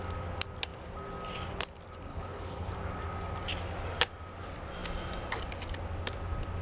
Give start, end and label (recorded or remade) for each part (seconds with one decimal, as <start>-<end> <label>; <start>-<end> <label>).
0.0-2.1 recorded; 2.1-2.7 remade; 2.7-6.6 recorded